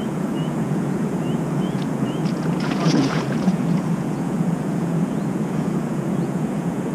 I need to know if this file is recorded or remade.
remade